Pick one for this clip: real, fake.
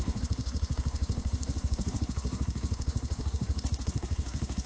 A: fake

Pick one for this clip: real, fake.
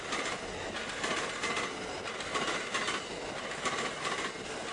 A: real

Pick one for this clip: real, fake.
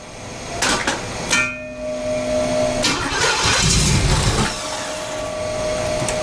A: real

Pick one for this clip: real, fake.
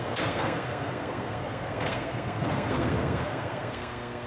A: fake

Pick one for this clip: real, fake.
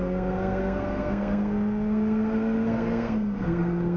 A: fake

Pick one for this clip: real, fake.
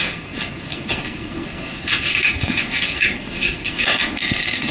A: fake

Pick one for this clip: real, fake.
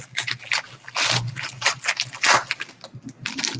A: real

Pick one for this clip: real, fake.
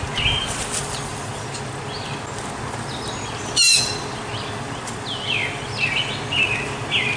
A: real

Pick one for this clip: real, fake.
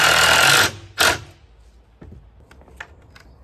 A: real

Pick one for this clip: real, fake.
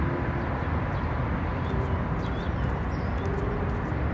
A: real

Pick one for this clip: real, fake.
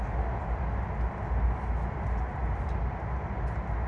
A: real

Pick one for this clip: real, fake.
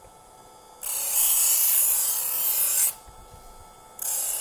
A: real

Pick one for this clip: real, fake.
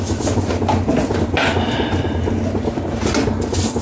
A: real